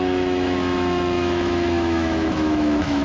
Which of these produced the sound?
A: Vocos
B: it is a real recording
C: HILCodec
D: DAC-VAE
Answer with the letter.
D